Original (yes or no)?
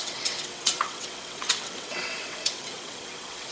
no